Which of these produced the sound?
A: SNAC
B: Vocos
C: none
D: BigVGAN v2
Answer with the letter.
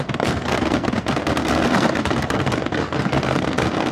A